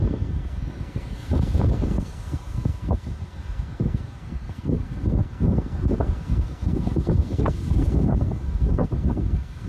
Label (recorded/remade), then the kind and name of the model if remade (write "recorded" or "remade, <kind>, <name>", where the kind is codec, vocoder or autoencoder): remade, codec, SNAC